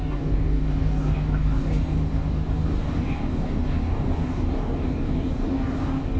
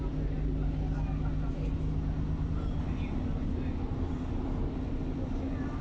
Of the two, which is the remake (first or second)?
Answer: first